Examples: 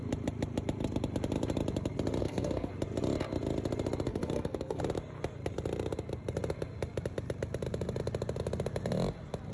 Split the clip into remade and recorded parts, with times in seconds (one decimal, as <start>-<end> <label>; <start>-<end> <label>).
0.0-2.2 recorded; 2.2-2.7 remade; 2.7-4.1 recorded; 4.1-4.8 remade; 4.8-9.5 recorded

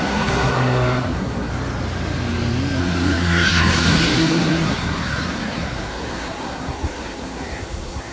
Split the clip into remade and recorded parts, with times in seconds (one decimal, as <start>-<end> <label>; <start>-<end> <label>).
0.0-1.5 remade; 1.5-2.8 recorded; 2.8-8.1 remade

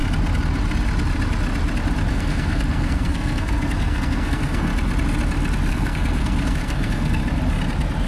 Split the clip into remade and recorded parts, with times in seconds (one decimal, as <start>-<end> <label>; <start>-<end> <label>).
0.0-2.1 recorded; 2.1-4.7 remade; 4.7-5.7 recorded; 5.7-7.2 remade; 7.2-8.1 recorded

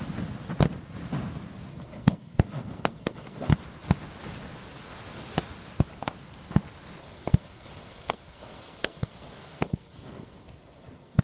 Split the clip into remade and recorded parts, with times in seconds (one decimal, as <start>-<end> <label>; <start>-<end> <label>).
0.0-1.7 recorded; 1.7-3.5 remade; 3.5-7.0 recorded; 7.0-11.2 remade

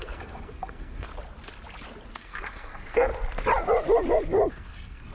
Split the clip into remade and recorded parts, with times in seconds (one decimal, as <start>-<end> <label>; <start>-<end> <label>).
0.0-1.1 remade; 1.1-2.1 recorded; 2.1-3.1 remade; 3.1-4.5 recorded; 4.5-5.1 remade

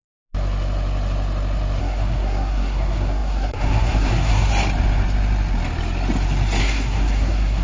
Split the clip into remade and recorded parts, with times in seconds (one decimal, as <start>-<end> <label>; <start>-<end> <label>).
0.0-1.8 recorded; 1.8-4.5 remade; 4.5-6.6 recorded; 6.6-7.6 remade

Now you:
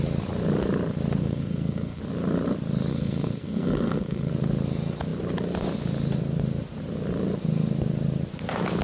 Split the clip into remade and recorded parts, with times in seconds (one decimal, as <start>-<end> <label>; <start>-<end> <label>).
0.0-1.2 recorded; 1.2-2.0 remade; 2.0-2.9 recorded; 2.9-4.3 remade; 4.3-8.8 recorded

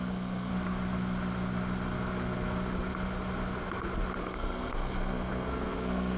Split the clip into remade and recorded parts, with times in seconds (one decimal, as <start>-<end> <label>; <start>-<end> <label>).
0.0-0.5 remade; 0.5-4.2 recorded; 4.2-6.2 remade